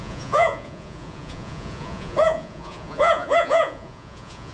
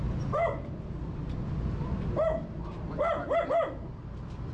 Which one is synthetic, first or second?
first